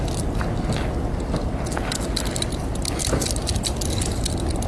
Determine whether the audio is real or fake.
real